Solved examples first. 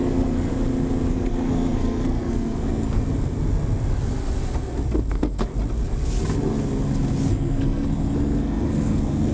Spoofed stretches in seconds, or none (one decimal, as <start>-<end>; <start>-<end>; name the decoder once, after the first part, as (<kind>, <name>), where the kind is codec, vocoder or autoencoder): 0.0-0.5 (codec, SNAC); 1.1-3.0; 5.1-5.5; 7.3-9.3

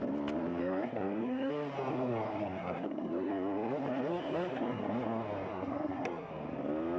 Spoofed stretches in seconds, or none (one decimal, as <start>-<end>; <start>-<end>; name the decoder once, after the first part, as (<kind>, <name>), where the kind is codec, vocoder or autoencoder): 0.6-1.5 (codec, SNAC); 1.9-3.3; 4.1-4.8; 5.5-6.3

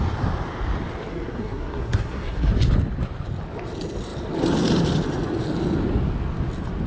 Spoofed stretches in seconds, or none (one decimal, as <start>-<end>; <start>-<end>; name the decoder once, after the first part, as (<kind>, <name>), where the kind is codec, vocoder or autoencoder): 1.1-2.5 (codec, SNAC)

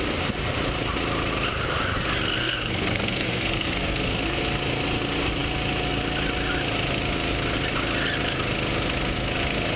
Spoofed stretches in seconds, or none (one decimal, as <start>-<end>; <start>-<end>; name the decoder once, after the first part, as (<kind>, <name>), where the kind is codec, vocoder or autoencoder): 2.4-4.4 (codec, SNAC)